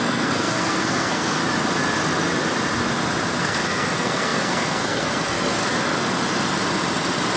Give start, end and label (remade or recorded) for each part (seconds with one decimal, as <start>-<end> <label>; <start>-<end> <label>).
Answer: 0.0-1.4 remade; 1.4-3.4 recorded; 3.4-5.6 remade; 5.6-7.4 recorded